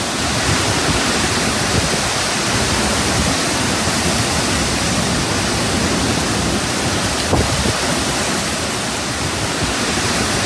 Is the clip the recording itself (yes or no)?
yes